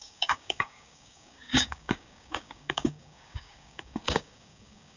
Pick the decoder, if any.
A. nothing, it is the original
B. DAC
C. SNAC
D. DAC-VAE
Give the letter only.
B